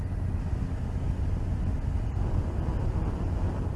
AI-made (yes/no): no